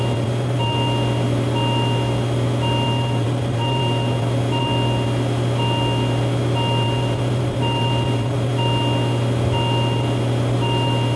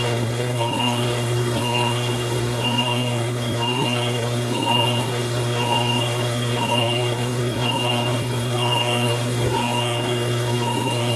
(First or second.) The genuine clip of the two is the first